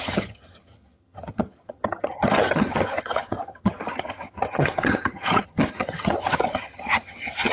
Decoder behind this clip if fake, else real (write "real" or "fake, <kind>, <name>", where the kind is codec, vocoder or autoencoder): fake, vocoder, HiFi-GAN